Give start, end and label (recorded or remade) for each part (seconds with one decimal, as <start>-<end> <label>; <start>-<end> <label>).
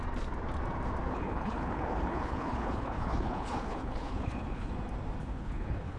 0.0-1.1 recorded; 1.1-4.7 remade; 4.7-5.2 recorded; 5.2-6.0 remade